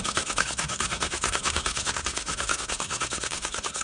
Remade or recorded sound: remade